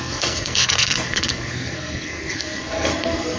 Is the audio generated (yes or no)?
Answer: yes